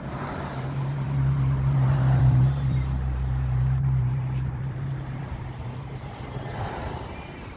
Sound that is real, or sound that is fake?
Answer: fake